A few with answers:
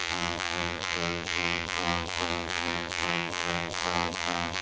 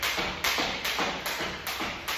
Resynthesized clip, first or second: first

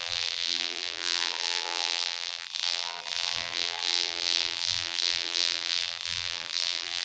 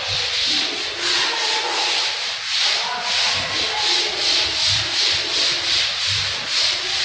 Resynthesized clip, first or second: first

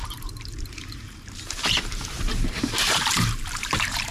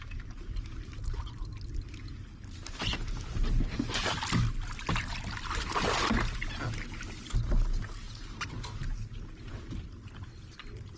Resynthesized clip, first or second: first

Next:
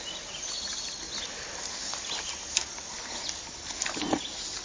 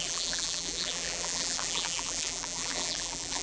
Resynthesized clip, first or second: second